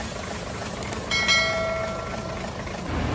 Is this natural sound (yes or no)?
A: yes